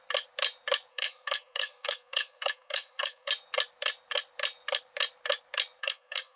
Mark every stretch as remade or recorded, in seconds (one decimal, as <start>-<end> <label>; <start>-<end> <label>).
0.0-0.9 recorded; 0.9-3.3 remade; 3.3-5.8 recorded; 5.8-6.4 remade